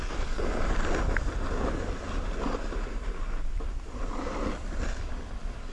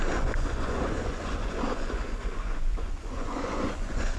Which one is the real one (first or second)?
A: first